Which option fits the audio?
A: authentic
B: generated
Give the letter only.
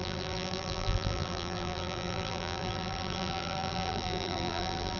B